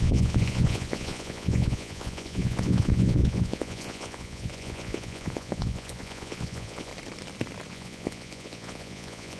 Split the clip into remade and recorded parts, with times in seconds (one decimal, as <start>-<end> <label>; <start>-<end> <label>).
0.0-6.9 remade; 6.9-7.7 recorded; 7.7-9.4 remade